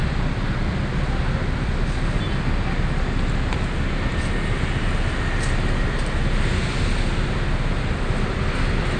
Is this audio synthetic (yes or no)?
no